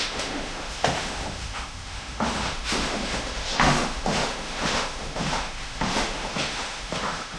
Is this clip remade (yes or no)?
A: yes